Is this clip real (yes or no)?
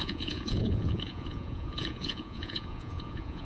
no